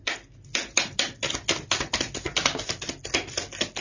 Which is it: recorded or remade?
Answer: recorded